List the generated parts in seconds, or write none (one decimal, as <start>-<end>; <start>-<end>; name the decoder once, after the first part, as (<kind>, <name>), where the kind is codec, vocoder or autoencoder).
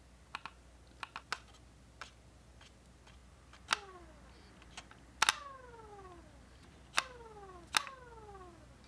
none